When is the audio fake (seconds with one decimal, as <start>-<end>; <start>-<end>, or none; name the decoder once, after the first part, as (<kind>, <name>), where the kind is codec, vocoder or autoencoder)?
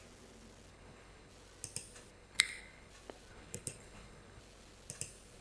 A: 0.7-1.3 (codec, HILCodec); 2.1-2.9; 3.3-4.4